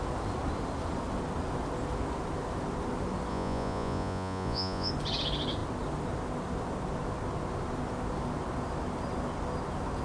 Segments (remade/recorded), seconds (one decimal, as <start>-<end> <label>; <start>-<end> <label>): 0.0-3.3 recorded; 3.3-4.9 remade; 4.9-10.0 recorded

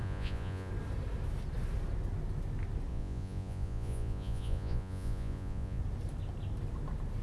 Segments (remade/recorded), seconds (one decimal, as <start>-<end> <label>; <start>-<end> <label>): 0.0-0.7 remade; 0.7-2.9 recorded; 2.9-5.8 remade; 5.8-7.2 recorded

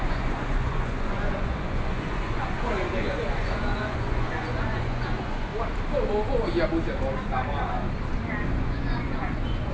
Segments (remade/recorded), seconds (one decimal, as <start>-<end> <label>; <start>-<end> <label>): 0.0-5.5 remade; 5.5-8.5 recorded; 8.5-9.7 remade